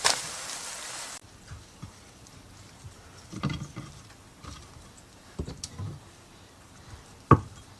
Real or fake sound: fake